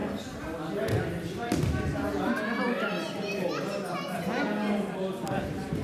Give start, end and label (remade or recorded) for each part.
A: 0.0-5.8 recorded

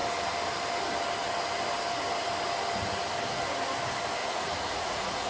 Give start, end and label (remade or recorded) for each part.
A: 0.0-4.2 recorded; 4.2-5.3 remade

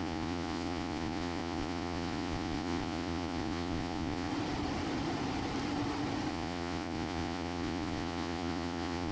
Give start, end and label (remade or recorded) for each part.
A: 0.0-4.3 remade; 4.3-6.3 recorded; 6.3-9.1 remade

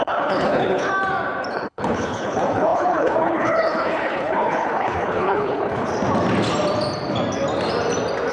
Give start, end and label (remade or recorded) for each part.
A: 0.0-0.9 remade; 0.9-1.5 recorded; 1.5-5.9 remade; 5.9-8.3 recorded

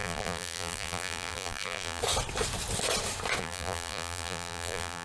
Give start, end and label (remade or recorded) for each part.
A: 0.0-2.0 remade; 2.0-3.4 recorded; 3.4-5.0 remade

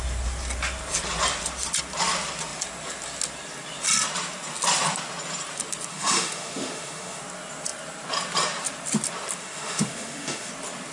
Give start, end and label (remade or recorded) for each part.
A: 0.0-5.9 recorded; 5.9-7.2 remade; 7.2-9.4 recorded; 9.4-10.5 remade; 10.5-10.9 recorded